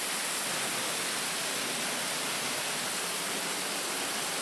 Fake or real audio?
real